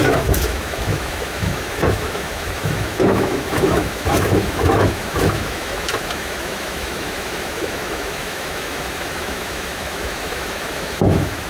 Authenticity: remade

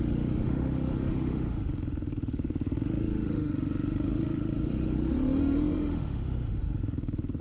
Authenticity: remade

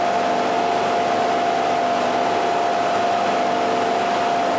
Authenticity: recorded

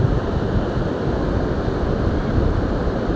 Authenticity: recorded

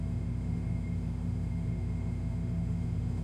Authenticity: remade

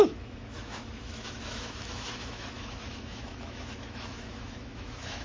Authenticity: remade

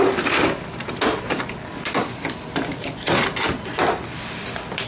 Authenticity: recorded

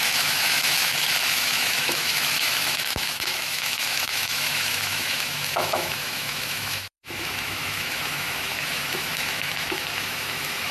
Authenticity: remade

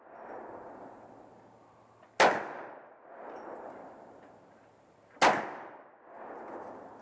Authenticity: recorded